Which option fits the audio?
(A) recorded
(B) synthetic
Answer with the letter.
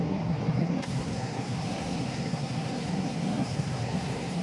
B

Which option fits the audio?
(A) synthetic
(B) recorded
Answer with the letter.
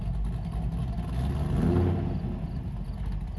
B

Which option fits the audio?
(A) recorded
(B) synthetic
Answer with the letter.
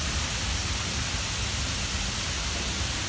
A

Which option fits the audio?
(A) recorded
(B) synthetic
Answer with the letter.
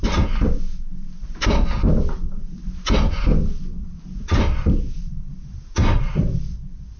A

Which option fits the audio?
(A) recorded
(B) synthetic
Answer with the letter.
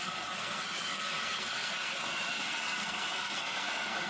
B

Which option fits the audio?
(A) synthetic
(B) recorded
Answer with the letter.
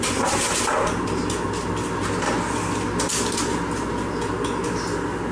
B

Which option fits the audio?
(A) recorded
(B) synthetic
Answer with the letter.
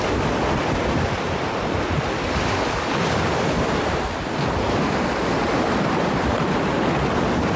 A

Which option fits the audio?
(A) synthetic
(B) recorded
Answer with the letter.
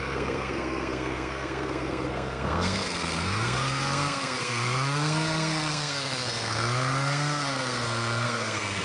A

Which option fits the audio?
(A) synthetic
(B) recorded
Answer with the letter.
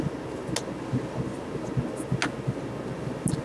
B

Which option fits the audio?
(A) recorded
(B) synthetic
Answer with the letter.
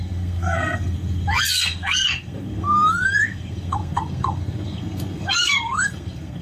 B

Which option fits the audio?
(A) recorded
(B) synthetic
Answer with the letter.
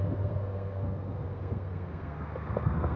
B